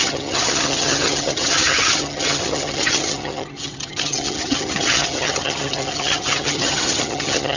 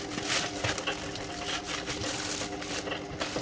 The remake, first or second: first